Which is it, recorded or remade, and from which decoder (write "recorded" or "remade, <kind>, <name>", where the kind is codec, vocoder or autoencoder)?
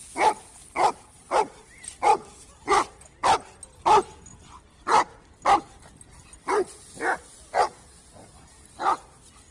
recorded